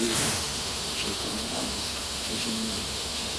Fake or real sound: fake